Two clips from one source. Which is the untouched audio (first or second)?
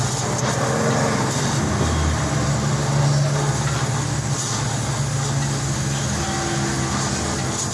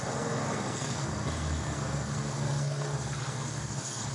first